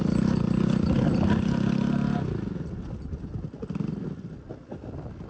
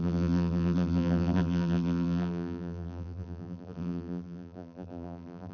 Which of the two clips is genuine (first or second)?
first